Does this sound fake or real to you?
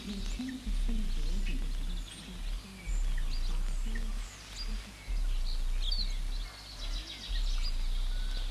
real